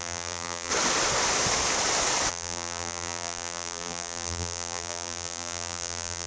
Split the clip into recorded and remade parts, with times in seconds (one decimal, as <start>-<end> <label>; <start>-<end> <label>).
0.0-0.7 remade; 0.7-2.3 recorded; 2.3-6.3 remade